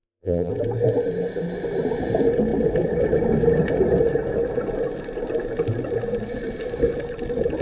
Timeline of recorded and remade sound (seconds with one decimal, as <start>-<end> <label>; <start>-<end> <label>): 0.0-0.5 remade; 0.5-7.6 recorded